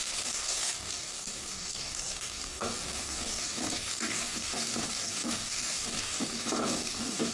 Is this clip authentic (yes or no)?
no